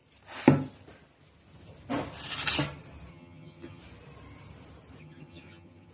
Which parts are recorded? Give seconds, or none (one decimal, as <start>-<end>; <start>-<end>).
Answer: 0.0-3.1; 3.8-5.0